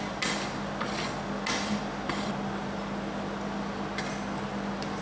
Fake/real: real